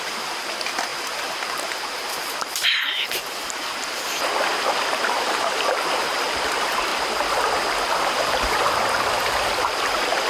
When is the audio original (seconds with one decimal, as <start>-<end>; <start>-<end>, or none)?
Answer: 6.9-7.8